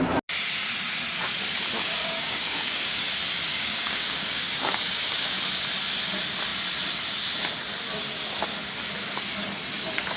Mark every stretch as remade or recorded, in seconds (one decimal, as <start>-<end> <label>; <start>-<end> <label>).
0.0-2.0 recorded; 2.0-3.1 remade; 3.1-3.5 recorded; 3.5-5.4 remade; 5.4-10.2 recorded